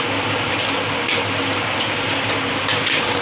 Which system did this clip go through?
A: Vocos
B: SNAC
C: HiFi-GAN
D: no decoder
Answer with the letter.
D